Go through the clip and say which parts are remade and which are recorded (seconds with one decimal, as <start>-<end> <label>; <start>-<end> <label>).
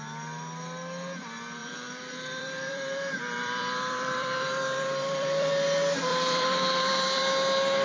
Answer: 0.0-1.6 recorded; 1.6-5.5 remade; 5.5-6.1 recorded; 6.1-7.2 remade; 7.2-7.8 recorded